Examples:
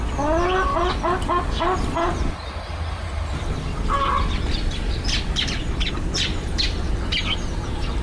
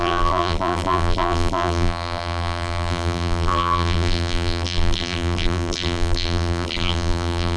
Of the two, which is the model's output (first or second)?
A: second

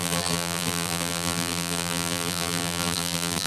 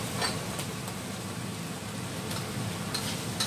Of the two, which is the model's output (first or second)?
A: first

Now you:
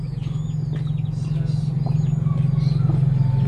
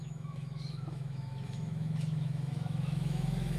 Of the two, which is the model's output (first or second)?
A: second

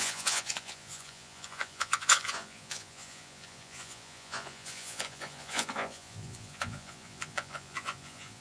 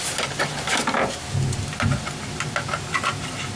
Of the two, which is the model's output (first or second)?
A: first